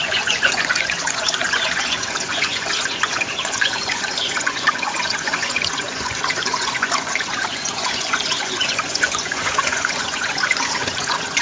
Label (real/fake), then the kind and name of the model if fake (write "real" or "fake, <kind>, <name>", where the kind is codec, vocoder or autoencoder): fake, vocoder, Vocos